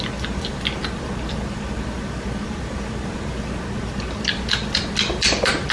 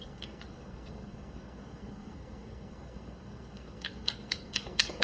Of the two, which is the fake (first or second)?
second